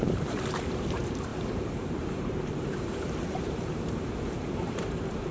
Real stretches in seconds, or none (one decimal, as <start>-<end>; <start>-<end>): none